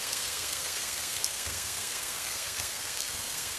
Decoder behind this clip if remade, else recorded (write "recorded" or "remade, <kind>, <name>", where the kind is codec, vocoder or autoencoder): remade, codec, SNAC